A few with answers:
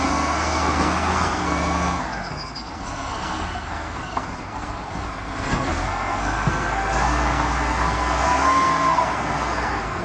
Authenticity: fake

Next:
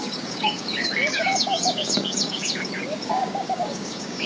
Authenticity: fake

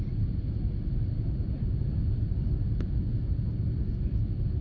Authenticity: real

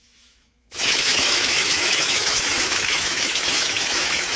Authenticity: fake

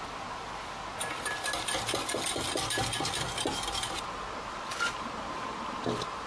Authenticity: real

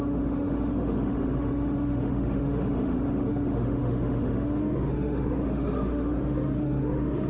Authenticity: fake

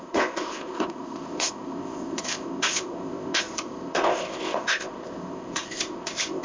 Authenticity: fake